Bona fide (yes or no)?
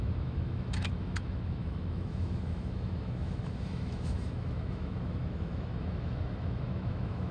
no